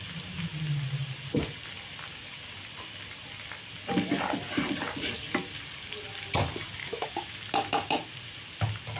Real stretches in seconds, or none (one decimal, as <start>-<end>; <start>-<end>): 0.0-6.8; 7.4-9.0